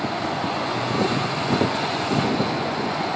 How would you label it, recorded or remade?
remade